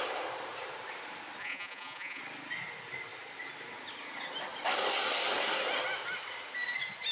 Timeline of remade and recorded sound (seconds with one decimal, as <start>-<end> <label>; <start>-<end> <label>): 0.0-1.4 recorded; 1.4-2.2 remade; 2.2-7.1 recorded